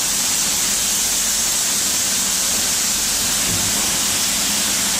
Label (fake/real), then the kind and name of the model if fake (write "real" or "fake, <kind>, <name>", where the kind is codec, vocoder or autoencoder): fake, vocoder, BigVGAN v2